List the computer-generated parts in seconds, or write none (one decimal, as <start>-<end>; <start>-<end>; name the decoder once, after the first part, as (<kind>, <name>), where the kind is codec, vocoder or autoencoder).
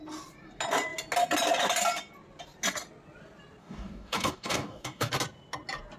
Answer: 3.6-5.1 (codec, DAC)